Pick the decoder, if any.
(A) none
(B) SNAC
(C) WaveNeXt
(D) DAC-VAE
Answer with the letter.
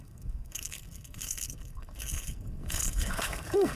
B